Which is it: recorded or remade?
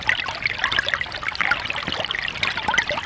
recorded